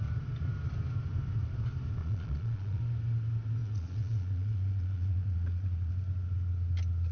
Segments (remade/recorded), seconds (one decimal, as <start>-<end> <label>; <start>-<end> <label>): 0.0-2.0 recorded; 2.0-2.8 remade; 2.8-3.6 recorded; 3.6-5.9 remade; 5.9-7.1 recorded